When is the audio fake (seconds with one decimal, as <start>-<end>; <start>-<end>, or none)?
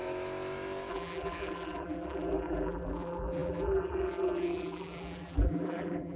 0.9-6.2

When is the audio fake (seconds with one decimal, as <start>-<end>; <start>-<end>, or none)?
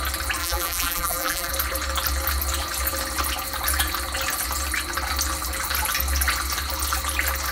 0.4-1.5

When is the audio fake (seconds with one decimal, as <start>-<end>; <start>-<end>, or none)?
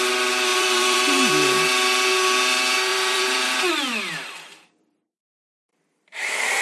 0.5-1.3; 2.9-3.7; 5.7-6.6